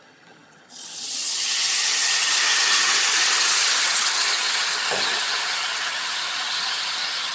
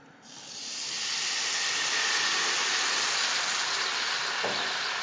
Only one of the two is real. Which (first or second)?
second